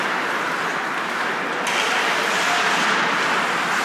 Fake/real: real